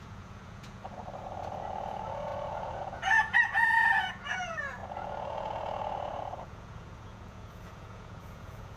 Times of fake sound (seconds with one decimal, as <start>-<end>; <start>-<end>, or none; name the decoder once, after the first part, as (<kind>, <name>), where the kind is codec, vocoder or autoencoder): 0.0-1.0 (vocoder, Vocos); 1.5-8.8